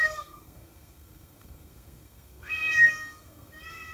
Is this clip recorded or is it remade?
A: remade